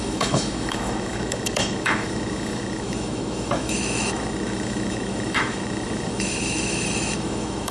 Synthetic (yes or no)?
yes